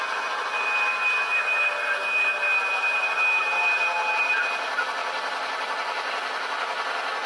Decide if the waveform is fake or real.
real